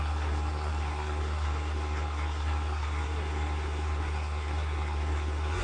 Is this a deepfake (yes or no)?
yes